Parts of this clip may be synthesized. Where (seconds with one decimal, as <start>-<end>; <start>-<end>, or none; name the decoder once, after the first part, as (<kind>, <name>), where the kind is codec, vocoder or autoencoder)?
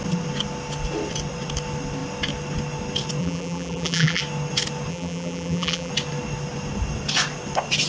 3.2-4.2 (vocoder, BigVGAN v2); 4.9-5.9